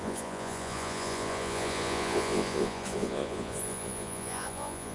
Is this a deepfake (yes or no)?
yes